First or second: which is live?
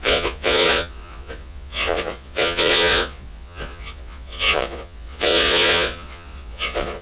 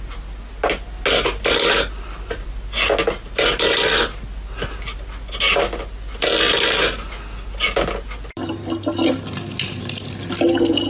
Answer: second